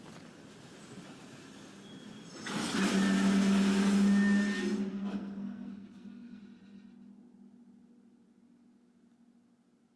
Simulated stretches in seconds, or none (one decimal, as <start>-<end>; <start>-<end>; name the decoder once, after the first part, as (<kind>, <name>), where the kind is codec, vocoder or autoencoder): 4.9-6.4 (codec, SNAC)